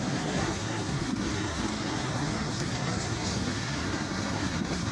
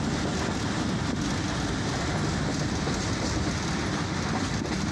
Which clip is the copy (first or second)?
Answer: first